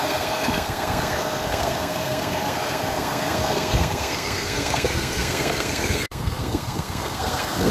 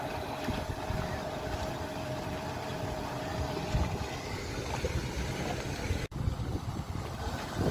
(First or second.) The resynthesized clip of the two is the first